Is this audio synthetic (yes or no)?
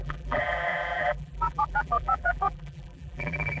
yes